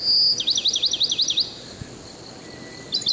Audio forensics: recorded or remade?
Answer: recorded